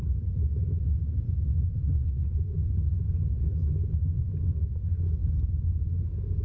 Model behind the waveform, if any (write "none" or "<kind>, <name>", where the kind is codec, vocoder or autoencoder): none